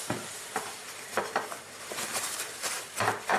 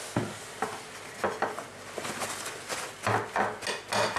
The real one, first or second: second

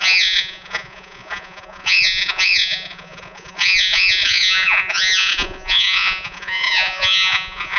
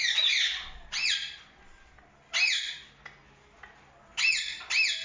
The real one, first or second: second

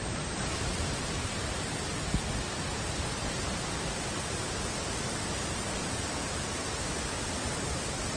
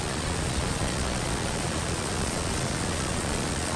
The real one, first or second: first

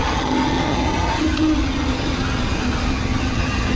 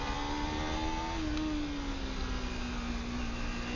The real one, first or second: second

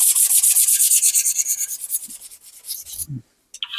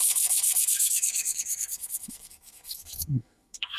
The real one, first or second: first